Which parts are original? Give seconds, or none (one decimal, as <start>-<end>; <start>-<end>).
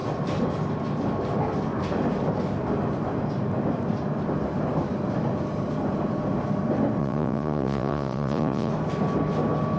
0.0-7.0; 8.7-9.8